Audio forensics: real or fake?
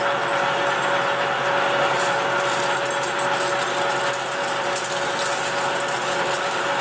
real